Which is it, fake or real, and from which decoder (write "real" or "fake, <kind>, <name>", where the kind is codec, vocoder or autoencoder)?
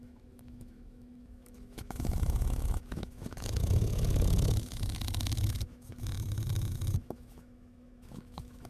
fake, autoencoder, DAC-VAE